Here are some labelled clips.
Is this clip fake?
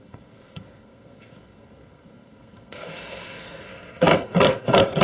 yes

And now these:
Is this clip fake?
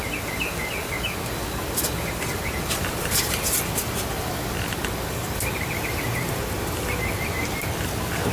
no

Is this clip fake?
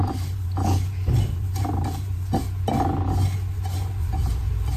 no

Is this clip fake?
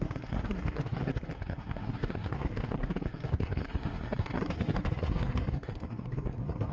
yes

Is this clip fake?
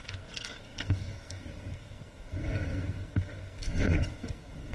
yes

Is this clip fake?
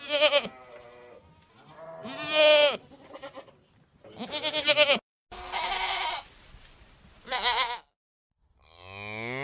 no